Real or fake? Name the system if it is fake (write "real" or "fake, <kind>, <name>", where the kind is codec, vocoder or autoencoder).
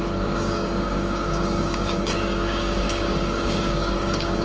fake, codec, DAC